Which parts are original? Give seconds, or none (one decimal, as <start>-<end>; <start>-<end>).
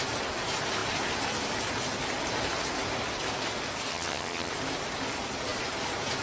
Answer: 0.0-3.9; 4.5-6.2